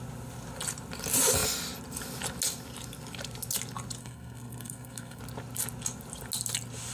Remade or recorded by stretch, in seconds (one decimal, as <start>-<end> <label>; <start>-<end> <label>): 0.0-4.0 recorded; 4.0-5.2 remade; 5.2-6.9 recorded